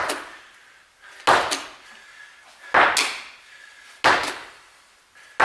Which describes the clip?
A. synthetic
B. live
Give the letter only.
B